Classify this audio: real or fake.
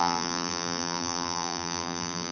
fake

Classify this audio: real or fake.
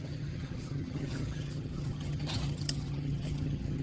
fake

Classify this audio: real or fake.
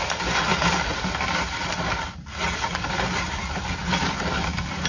real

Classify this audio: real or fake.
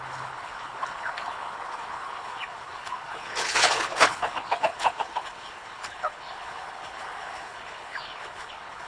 fake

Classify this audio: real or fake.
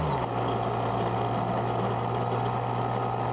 real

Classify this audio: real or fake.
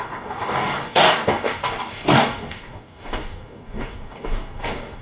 fake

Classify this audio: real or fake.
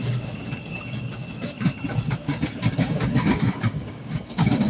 fake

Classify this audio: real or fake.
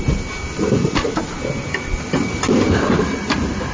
real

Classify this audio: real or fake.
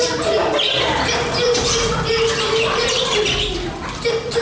fake